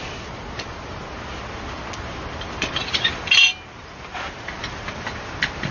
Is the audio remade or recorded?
recorded